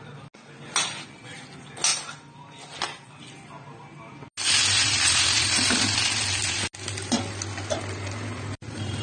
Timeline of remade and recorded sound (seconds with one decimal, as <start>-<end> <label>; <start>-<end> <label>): 0.0-9.0 recorded